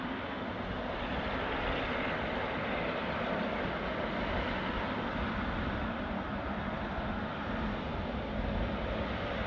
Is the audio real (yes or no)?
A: yes